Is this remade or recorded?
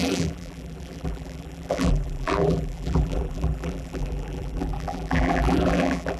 remade